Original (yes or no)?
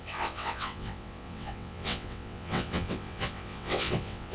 no